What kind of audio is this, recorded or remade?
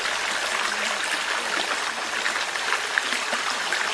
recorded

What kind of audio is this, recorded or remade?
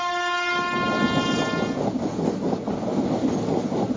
recorded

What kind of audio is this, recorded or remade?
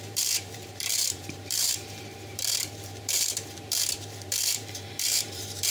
remade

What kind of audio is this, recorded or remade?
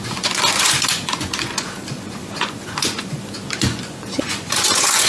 remade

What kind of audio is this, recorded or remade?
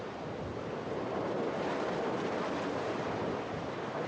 recorded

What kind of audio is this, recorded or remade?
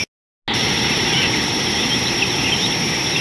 recorded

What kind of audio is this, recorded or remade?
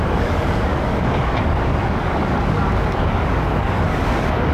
remade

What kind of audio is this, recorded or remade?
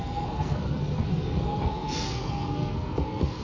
remade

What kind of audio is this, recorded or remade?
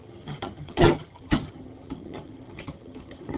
remade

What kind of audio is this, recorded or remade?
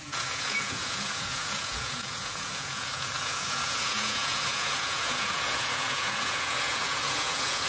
remade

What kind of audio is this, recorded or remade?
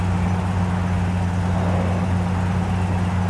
recorded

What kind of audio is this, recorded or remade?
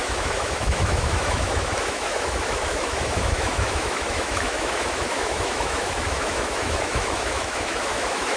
remade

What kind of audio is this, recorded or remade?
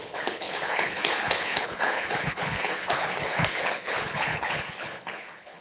remade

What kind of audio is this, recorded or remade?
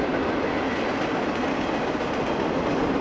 recorded